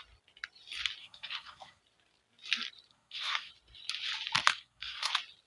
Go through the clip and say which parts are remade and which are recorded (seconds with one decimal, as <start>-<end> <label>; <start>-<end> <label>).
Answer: 0.0-1.0 recorded; 1.0-1.8 remade; 1.8-2.9 recorded; 2.9-3.5 remade; 3.5-4.5 recorded; 4.5-5.1 remade; 5.1-5.5 recorded